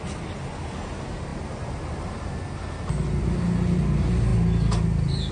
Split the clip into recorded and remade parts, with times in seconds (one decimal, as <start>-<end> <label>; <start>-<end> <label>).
0.0-5.3 recorded

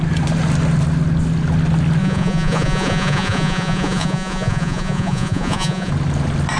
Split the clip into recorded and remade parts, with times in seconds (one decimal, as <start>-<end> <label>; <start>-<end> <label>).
0.0-2.0 recorded; 2.0-5.9 remade; 5.9-6.6 recorded

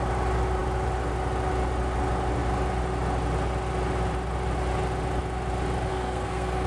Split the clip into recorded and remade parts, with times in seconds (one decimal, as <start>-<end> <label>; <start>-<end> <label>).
0.0-5.9 recorded; 5.9-6.7 remade

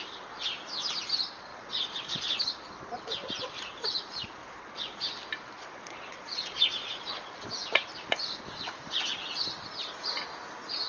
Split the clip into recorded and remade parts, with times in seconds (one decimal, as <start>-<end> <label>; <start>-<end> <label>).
0.0-1.5 recorded; 1.5-2.4 remade; 2.4-4.4 recorded; 4.4-5.1 remade; 5.1-5.6 recorded; 5.6-7.4 remade; 7.4-10.9 recorded